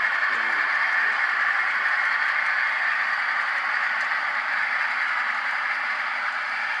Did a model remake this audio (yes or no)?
no